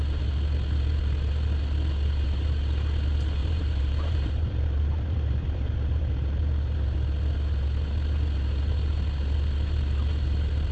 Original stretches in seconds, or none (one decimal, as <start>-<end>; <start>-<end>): 0.0-3.4; 6.0-10.7